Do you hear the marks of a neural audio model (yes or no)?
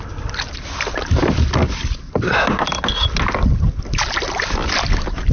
no